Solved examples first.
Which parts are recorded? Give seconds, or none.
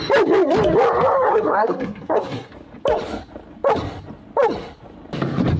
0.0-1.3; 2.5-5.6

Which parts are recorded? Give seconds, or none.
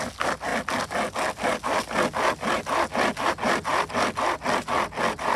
0.0-5.4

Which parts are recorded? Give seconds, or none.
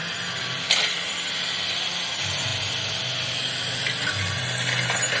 0.0-5.2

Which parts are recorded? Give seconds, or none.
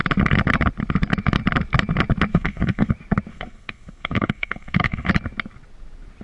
0.0-2.3; 2.9-3.3; 5.1-6.2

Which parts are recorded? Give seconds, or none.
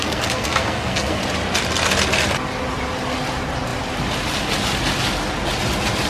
1.2-6.1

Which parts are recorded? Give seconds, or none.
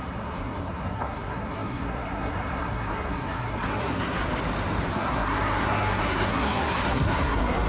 4.2-4.9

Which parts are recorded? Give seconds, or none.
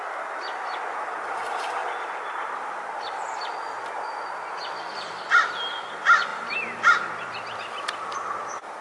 0.0-8.8